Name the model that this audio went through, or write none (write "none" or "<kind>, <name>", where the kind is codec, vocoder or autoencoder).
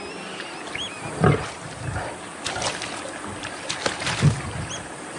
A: none